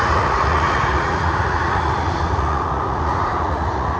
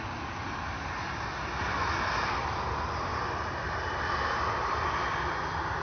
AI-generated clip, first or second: first